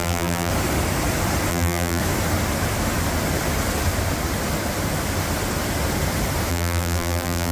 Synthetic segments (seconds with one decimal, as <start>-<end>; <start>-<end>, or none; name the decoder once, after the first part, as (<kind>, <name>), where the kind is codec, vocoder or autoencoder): 0.0-0.5 (vocoder, BigVGAN v2); 1.5-2.0; 6.5-7.5

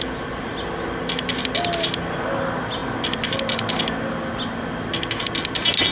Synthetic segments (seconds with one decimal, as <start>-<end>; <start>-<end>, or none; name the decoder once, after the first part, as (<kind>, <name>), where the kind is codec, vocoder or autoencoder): none

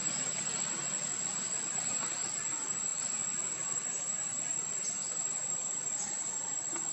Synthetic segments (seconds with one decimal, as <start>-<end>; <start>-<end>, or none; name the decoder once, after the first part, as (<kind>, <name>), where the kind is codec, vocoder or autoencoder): 0.0-2.9 (vocoder, BigVGAN v2); 3.5-6.9

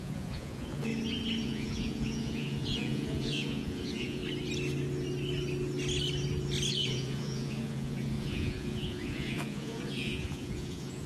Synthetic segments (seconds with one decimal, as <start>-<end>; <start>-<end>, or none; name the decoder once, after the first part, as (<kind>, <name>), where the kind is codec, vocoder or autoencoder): 0.0-0.9 (vocoder, Vocos); 1.4-4.2; 6.7-11.1

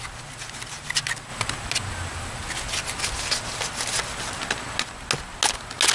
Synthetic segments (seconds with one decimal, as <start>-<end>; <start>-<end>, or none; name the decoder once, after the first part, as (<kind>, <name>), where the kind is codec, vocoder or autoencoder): none

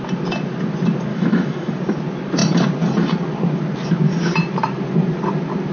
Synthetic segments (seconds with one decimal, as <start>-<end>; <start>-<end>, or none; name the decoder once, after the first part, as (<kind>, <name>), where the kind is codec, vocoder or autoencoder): 1.1-1.8 (autoencoder, DAC-VAE)

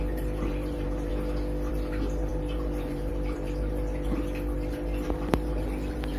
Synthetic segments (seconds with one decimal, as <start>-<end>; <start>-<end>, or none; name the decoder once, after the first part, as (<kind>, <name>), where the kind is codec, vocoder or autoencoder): 0.0-1.1 (vocoder, BigVGAN v2); 1.7-6.2